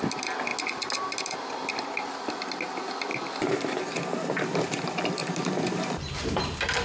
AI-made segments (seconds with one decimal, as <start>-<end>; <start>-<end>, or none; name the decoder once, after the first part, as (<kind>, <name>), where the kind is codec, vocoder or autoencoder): 3.1-4.0 (vocoder, BigVGAN v2); 5.2-6.8